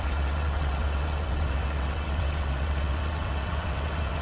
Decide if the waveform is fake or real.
fake